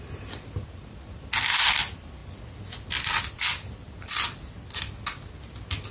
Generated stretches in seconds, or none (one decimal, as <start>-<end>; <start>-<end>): none